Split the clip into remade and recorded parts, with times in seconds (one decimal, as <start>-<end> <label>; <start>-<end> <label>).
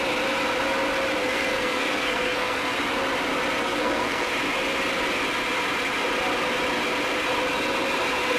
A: 0.0-1.2 recorded; 1.2-2.6 remade; 2.6-3.6 recorded; 3.6-4.3 remade; 4.3-8.4 recorded